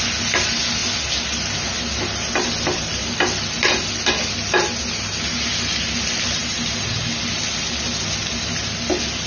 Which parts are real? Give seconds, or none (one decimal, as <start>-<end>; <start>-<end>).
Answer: 0.0-9.3